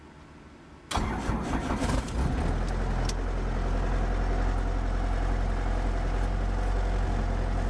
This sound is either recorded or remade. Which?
recorded